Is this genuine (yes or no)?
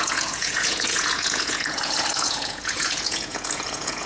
no